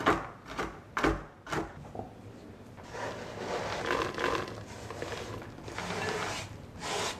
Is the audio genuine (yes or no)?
yes